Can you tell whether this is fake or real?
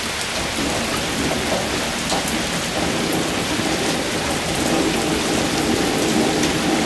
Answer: real